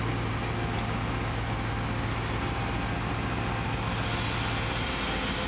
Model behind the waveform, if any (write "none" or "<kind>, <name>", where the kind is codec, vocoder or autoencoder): none